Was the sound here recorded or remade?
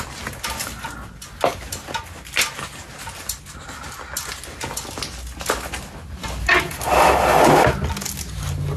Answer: recorded